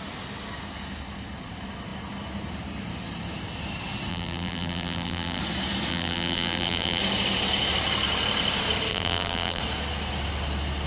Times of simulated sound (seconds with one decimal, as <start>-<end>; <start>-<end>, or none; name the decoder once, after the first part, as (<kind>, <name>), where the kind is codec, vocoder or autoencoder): 4.1-5.4 (vocoder, BigVGAN v2); 5.9-7.0; 8.9-9.6